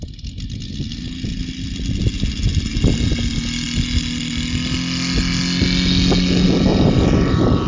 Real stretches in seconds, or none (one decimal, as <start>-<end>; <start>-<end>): 0.0-6.7